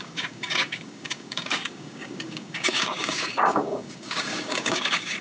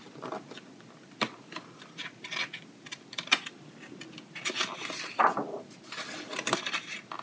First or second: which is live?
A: second